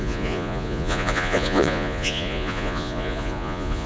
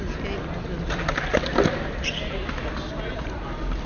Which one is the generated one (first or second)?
first